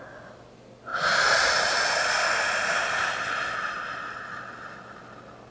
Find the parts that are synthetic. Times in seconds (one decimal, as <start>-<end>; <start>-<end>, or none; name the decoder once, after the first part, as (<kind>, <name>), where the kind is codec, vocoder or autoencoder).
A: none